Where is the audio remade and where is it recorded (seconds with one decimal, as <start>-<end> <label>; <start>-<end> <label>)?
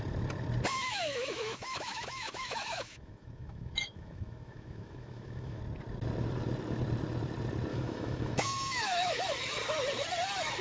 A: 0.0-0.7 recorded; 0.7-5.6 remade; 5.6-7.7 recorded; 7.7-9.2 remade; 9.2-10.6 recorded